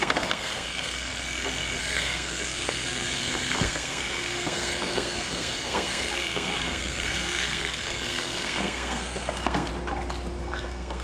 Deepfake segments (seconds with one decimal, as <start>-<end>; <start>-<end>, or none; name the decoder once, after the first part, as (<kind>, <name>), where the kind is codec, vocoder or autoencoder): 0.0-1.1 (codec, SNAC); 1.8-9.7; 10.4-11.0